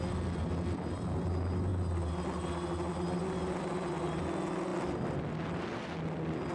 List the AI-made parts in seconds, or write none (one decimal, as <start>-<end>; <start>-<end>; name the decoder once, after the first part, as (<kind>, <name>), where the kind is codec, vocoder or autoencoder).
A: none